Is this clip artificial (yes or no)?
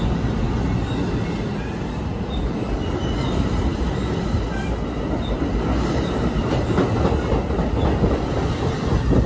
no